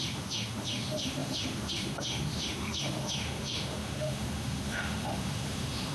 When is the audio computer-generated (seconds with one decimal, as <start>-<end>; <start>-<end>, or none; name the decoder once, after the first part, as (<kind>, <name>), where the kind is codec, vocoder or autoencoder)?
0.0-5.9 (autoencoder, DAC-VAE)

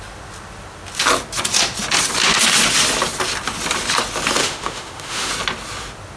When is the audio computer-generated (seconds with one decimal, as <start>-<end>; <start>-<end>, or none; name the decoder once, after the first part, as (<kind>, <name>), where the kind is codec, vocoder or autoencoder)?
4.4-5.3 (autoencoder, DAC-VAE)

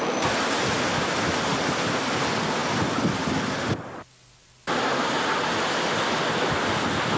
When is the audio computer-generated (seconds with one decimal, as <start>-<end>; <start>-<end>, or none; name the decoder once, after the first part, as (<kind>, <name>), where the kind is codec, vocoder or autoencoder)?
none

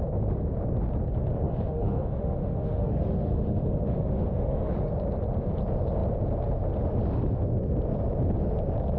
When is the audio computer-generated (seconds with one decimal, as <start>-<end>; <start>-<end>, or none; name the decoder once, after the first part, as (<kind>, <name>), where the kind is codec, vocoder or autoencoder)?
1.4-4.9 (autoencoder, DAC-VAE)

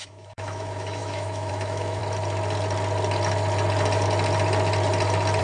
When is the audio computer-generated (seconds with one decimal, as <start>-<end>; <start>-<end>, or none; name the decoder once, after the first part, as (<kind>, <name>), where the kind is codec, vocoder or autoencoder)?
0.0-2.0 (autoencoder, DAC-VAE)